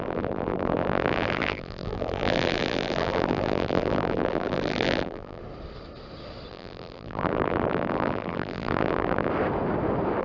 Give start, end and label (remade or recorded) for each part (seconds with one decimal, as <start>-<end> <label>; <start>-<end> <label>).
0.0-5.4 remade; 5.4-6.5 recorded; 6.5-9.3 remade; 9.3-10.2 recorded